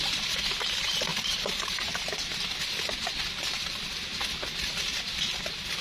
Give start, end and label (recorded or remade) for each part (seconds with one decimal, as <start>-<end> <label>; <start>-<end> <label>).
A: 0.0-5.8 recorded